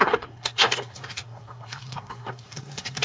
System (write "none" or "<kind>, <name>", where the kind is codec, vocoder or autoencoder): codec, SNAC